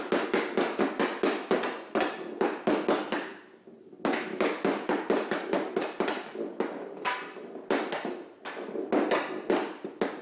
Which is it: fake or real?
real